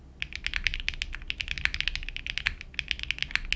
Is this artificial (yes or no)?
no